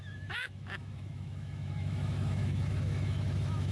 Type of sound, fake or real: fake